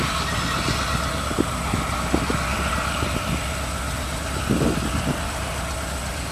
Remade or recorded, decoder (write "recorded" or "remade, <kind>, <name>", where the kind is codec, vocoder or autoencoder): recorded